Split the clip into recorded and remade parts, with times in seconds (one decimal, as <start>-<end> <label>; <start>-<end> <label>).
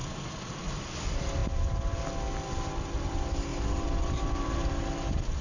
0.0-3.5 recorded; 3.5-4.6 remade; 4.6-5.4 recorded